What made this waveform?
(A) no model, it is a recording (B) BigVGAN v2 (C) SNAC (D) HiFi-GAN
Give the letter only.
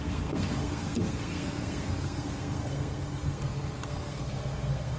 C